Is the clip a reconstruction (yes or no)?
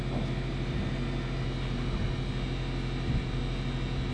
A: no